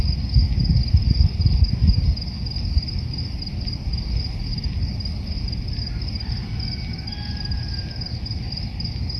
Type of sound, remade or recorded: recorded